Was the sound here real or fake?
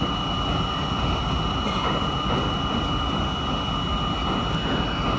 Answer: real